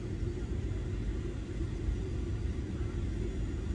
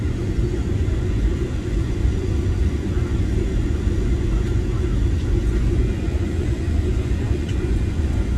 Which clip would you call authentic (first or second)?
first